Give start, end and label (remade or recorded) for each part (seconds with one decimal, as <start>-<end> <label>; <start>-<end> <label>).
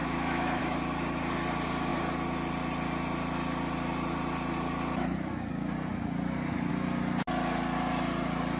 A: 0.0-0.6 remade; 0.6-8.6 recorded